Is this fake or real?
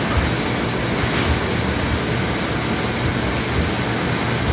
real